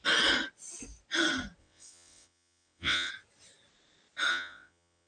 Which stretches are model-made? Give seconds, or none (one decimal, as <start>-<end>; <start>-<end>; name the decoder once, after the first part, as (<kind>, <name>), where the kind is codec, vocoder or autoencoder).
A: 1.6-3.1 (vocoder, WaveNeXt); 4.3-5.1